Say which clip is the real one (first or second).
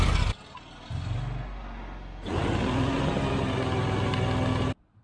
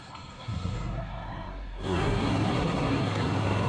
first